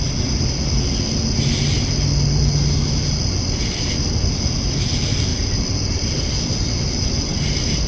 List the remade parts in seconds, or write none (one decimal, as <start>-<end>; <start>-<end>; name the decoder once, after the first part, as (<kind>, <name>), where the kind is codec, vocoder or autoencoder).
5.3-6.4 (vocoder, BigVGAN v2); 7.3-7.9